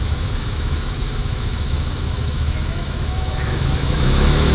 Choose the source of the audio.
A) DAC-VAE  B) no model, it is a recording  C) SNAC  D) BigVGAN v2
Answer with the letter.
A